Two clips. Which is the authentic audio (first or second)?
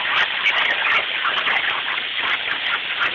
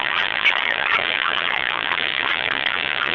first